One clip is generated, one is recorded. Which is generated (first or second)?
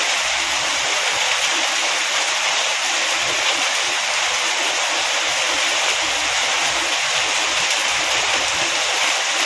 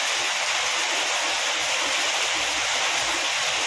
first